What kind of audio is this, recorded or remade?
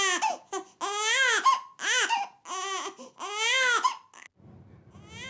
recorded